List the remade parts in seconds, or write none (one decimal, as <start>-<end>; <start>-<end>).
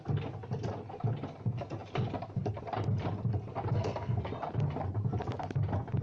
3.7-4.2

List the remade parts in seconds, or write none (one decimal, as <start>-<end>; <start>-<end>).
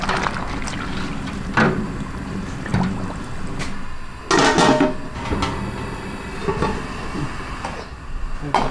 none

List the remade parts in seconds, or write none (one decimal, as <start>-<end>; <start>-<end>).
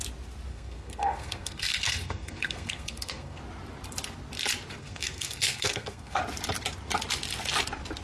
0.5-3.4; 4.8-6.2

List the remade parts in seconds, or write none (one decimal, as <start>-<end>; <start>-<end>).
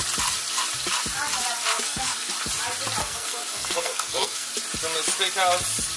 1.7-2.3; 3.0-4.5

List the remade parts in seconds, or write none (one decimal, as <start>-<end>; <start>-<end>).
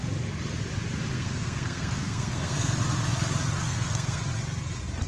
1.1-2.8; 3.6-4.2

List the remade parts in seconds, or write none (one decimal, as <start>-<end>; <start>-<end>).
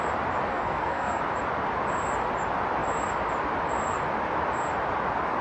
0.5-1.2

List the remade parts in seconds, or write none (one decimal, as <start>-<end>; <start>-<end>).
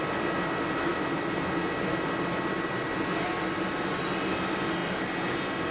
none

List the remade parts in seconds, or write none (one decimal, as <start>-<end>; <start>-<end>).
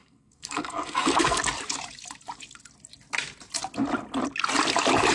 0.0-1.4